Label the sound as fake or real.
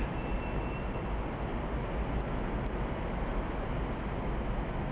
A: real